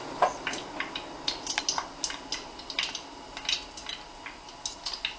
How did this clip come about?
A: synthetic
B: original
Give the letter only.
B